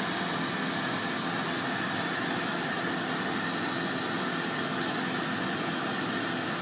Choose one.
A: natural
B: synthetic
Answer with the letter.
A